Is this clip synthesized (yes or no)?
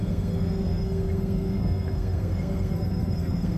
yes